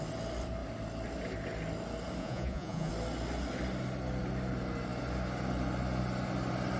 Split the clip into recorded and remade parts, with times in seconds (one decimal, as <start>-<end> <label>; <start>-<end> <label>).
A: 0.0-2.2 recorded; 2.2-2.9 remade; 2.9-6.8 recorded